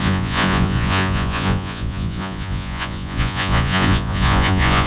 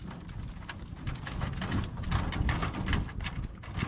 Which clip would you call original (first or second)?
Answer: second